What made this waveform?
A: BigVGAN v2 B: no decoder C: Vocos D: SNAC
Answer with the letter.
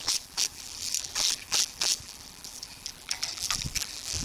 A